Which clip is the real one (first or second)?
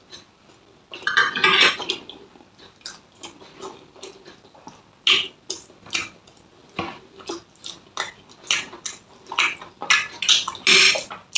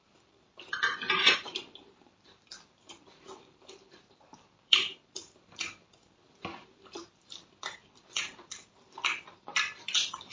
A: first